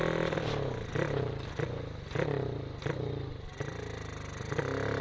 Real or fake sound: real